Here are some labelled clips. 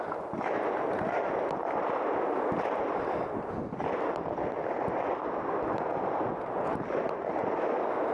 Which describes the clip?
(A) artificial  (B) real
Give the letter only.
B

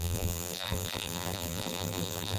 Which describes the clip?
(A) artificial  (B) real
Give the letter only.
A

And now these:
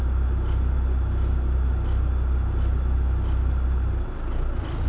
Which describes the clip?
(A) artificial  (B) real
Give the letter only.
B